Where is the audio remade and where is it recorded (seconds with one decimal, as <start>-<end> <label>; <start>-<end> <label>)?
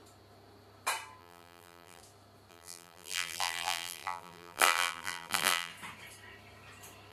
0.0-1.2 recorded; 1.2-2.0 remade; 2.0-2.5 recorded; 2.5-5.7 remade; 5.7-7.1 recorded